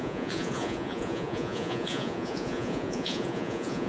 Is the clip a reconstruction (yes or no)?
yes